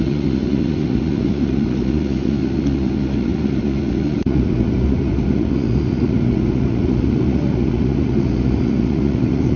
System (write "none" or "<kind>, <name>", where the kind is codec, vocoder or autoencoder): vocoder, Vocos